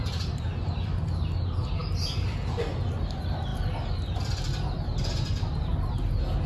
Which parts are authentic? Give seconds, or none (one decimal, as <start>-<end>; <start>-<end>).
0.0-6.5